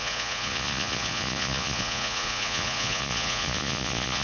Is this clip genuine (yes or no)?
no